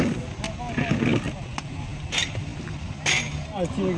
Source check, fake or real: real